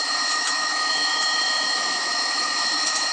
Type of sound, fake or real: fake